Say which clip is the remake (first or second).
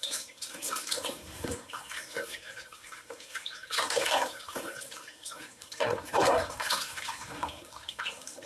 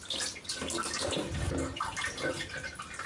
first